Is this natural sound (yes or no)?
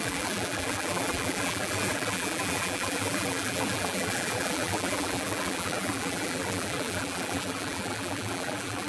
no